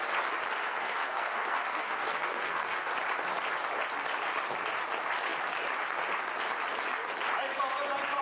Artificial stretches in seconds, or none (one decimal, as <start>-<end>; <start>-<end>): 0.6-2.9